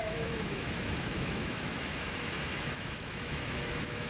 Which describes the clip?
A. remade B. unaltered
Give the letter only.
A